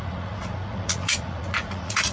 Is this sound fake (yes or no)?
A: yes